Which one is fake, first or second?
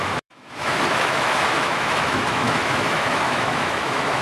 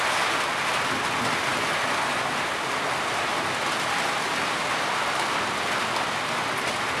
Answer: first